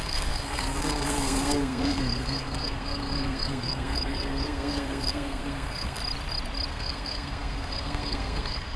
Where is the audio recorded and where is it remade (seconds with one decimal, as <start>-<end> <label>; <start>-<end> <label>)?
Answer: 0.0-6.0 remade; 6.0-6.7 recorded; 6.7-8.8 remade